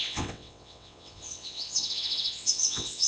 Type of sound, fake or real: fake